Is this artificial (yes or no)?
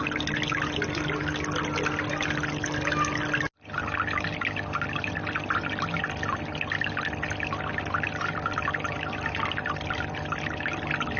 no